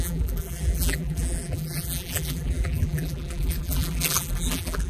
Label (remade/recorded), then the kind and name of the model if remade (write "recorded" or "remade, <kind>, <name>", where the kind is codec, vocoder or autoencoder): remade, vocoder, BigVGAN v2